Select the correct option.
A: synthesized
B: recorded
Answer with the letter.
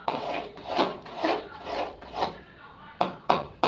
A